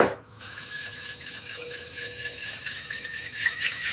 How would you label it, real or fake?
fake